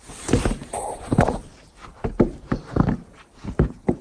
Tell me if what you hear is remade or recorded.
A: remade